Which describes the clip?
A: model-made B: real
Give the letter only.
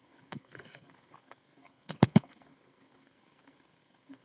A